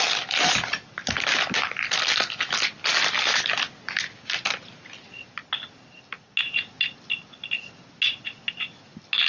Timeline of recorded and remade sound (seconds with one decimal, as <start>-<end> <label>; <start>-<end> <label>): 0.0-9.3 recorded